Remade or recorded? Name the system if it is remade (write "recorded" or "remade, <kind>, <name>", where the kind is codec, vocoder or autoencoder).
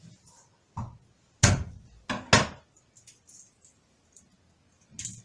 recorded